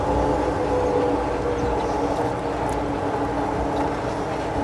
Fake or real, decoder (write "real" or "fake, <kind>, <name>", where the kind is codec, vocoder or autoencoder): real